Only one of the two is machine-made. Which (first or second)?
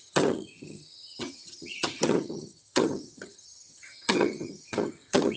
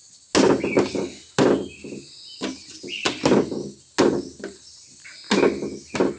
first